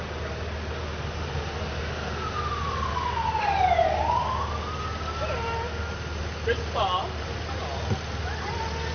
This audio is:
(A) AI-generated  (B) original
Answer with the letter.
B